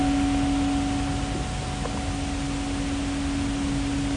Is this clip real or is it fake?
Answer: real